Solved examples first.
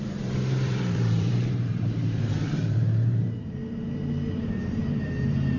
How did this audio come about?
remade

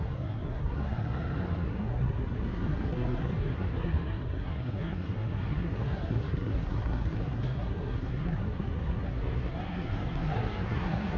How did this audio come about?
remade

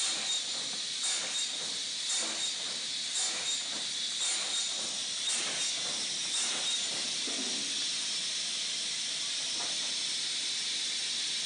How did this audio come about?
recorded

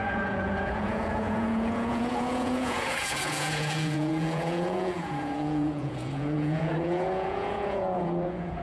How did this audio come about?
remade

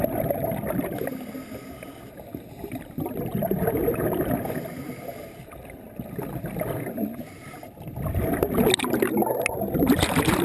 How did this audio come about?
recorded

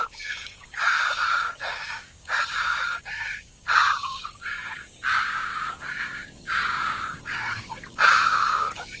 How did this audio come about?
remade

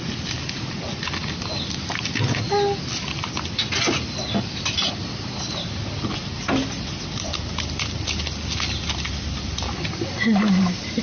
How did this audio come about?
recorded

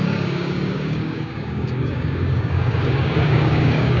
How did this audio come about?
remade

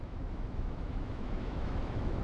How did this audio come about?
remade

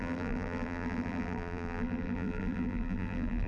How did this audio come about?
remade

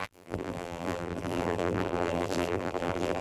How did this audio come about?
remade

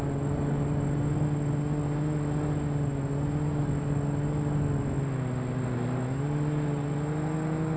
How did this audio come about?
recorded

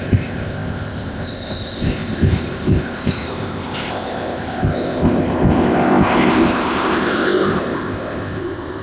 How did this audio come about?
remade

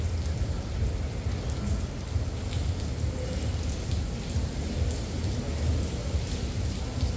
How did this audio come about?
recorded